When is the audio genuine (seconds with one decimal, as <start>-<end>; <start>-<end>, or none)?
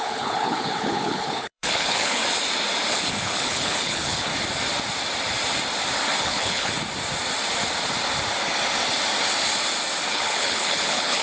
2.2-2.9; 4.3-6.2; 6.7-10.1